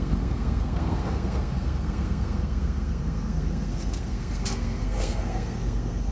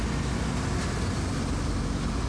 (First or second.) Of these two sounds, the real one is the second